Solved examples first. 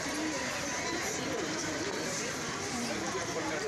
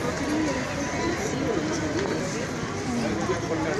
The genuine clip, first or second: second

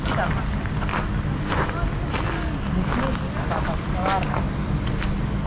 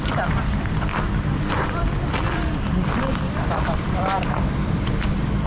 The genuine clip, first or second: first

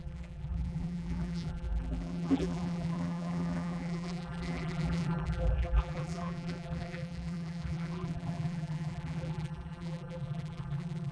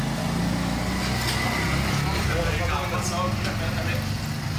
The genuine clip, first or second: second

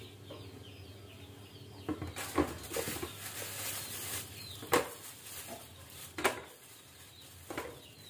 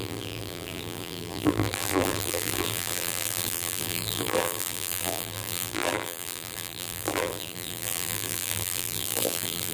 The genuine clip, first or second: first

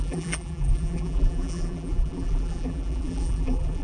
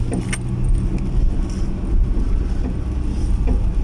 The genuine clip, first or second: second